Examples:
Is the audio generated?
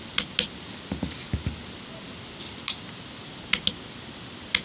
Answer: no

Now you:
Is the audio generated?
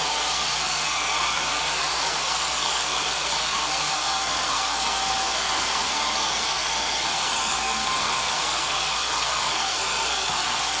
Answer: yes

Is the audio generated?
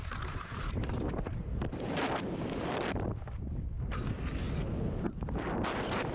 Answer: yes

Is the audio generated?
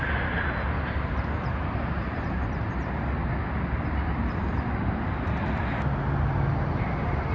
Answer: no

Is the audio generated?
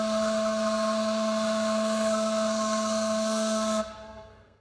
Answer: yes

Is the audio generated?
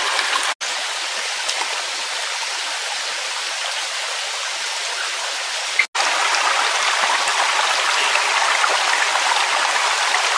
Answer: no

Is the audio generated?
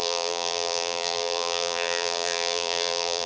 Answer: yes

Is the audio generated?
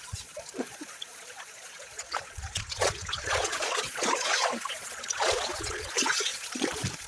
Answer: yes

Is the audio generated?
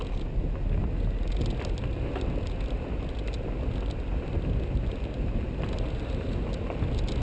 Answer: no